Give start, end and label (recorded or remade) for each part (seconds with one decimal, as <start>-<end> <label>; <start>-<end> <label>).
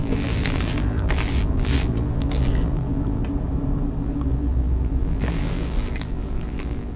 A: 0.0-3.2 remade; 3.2-4.0 recorded; 4.0-7.0 remade